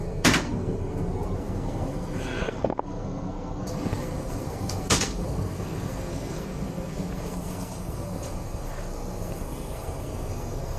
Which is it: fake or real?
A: fake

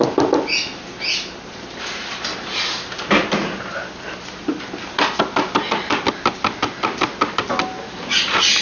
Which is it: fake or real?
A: real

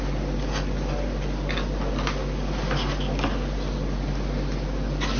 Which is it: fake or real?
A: real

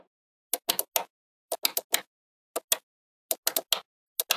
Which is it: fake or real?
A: real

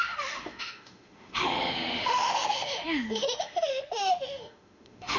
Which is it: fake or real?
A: fake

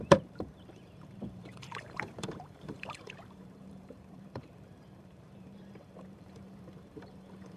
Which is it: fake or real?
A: fake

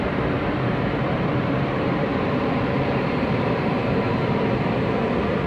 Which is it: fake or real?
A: fake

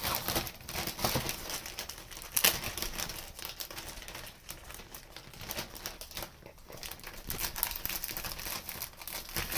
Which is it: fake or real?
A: real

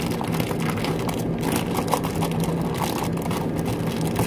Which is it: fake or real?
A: real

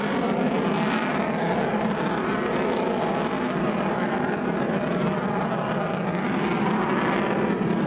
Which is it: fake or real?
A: real